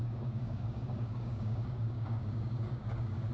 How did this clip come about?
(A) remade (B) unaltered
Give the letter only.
A